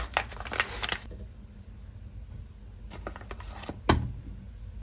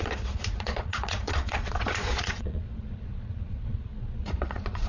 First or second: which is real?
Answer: first